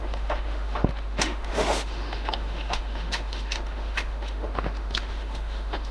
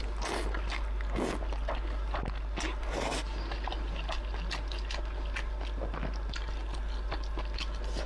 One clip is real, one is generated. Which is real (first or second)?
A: second